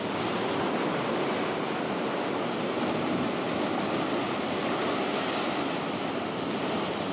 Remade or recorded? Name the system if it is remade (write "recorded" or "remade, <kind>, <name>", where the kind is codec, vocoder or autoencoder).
recorded